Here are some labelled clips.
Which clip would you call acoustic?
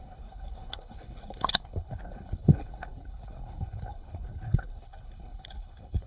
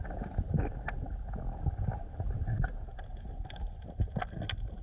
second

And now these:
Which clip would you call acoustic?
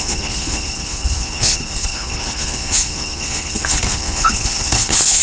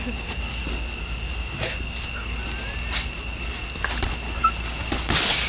second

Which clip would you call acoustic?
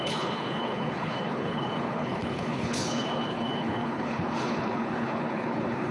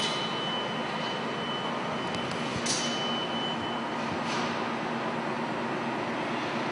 second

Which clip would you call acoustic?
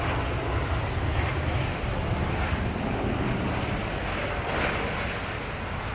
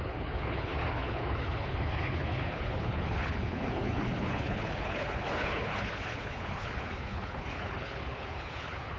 first